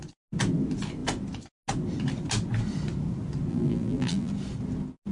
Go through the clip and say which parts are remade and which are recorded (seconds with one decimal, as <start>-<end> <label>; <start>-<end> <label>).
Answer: 0.0-3.5 recorded; 3.5-4.3 remade; 4.3-5.1 recorded